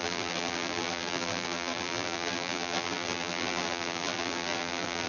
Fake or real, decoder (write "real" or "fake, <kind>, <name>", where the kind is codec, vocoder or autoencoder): fake, vocoder, BigVGAN v2